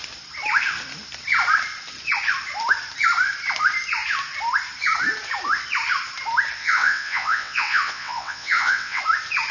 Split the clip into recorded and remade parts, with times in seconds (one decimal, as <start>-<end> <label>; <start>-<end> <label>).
0.0-6.6 recorded; 6.6-9.0 remade; 9.0-9.5 recorded